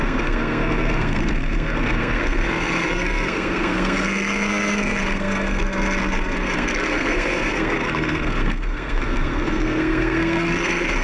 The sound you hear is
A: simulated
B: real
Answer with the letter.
A